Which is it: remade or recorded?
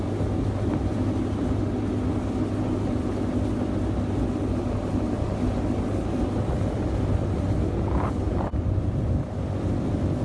recorded